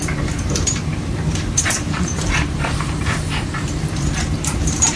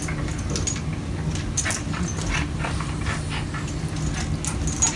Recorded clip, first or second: second